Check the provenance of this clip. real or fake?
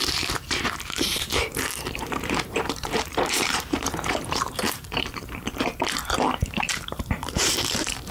fake